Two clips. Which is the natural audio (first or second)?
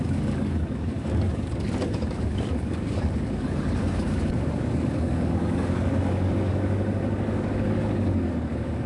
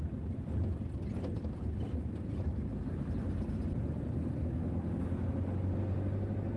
second